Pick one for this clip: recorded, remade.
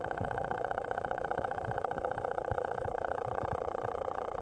remade